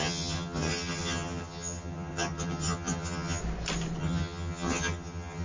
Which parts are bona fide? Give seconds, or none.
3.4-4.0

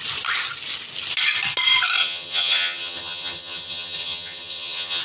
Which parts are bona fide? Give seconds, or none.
0.0-2.0

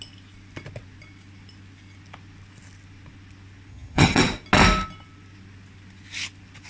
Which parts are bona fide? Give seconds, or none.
0.0-3.7; 4.2-6.7

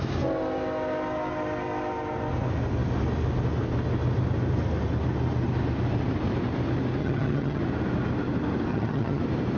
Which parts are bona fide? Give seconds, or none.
0.0-7.0; 7.6-8.7; 9.2-9.6

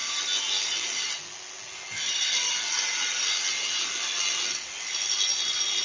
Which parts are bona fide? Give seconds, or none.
0.0-5.8